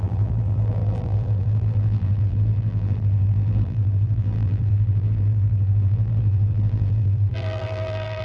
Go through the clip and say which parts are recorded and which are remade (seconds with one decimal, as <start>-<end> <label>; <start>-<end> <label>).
0.0-8.2 remade